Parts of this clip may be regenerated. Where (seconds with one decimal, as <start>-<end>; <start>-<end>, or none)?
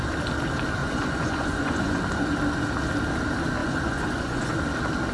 0.8-2.0; 3.6-4.5